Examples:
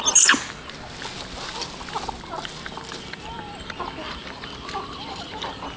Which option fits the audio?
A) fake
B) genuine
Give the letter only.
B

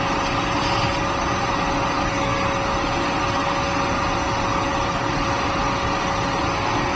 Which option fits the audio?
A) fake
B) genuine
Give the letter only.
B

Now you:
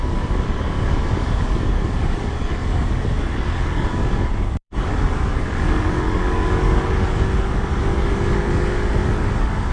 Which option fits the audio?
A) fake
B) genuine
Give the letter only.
A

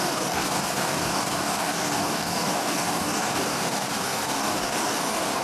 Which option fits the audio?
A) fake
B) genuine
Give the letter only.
A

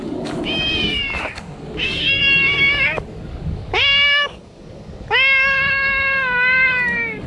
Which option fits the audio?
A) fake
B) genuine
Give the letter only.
A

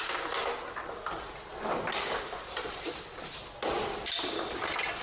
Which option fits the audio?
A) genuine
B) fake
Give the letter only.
A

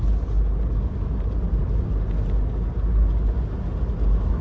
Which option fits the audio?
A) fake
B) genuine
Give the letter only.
B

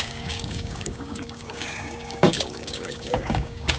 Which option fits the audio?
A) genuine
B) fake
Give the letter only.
B